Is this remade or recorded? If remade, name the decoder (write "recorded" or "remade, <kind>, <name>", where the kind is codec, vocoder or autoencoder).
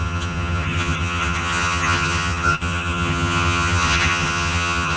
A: remade, vocoder, HiFi-GAN